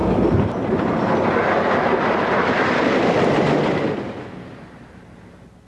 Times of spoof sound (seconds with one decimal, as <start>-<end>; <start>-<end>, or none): none